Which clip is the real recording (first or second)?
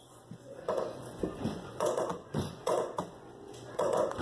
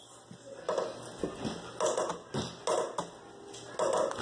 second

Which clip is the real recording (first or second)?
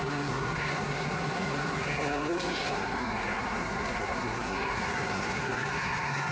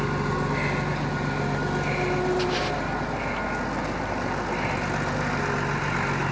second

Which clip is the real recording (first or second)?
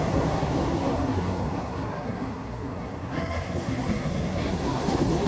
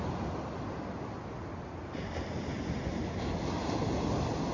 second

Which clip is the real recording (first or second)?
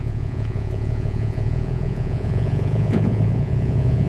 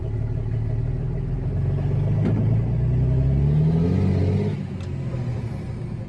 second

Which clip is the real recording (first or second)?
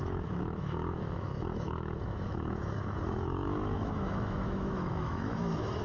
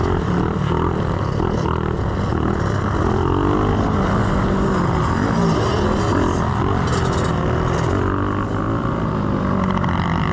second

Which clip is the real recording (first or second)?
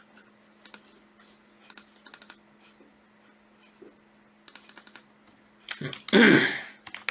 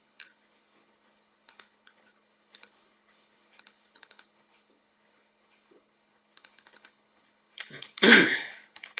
first